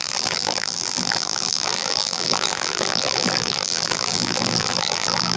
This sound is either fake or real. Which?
fake